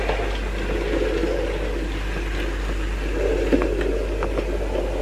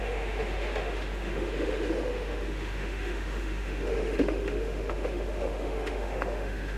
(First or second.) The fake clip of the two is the second